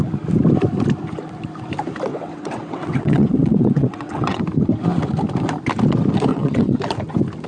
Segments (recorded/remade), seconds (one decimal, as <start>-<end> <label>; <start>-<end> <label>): 0.0-2.1 recorded; 2.1-4.4 remade; 4.4-6.3 recorded; 6.3-6.8 remade; 6.8-7.5 recorded